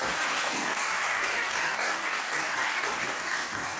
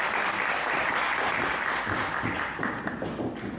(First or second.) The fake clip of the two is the first